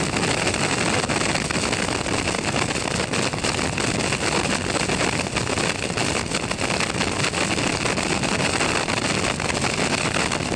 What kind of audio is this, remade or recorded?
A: recorded